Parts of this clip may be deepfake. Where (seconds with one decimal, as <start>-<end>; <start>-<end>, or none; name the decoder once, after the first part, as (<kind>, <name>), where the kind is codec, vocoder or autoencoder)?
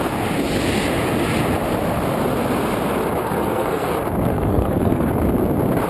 3.2-3.9 (codec, SNAC); 4.3-5.1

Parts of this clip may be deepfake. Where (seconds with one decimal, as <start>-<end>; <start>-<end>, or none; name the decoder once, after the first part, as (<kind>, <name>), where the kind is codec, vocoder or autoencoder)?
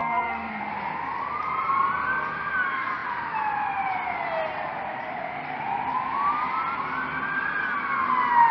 0.0-0.6 (codec, SNAC)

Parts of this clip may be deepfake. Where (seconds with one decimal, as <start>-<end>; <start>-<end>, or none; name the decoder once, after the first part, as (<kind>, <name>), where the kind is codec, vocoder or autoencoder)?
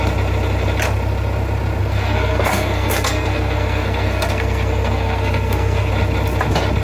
1.8-5.9 (codec, SNAC)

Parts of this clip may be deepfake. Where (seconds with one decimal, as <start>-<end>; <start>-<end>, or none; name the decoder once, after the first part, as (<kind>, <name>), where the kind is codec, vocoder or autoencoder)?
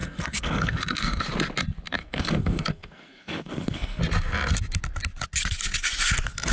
0.0-1.2 (codec, SNAC); 2.0-4.0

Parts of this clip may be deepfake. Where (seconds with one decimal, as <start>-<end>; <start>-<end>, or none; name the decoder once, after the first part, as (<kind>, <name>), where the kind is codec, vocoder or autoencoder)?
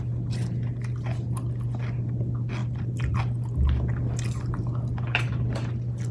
none